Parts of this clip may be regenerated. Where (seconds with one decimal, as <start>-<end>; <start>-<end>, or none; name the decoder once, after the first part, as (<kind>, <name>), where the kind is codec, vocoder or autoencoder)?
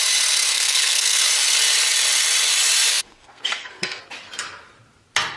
0.5-1.2 (codec, SNAC); 2.9-4.0